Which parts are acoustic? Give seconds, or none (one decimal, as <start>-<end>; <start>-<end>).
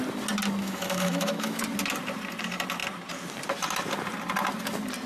0.0-0.6; 1.6-5.1